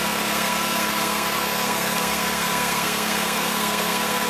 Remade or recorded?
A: remade